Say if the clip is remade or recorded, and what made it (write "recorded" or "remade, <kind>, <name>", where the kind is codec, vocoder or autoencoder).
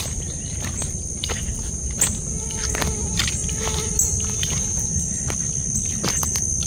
recorded